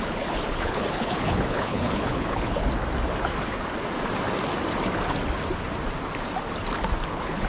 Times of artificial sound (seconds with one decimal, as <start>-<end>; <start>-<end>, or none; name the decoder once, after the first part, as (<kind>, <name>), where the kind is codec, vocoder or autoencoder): 0.0-2.6 (codec, HILCodec); 7.1-7.5